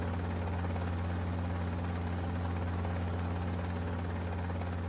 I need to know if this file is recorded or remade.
recorded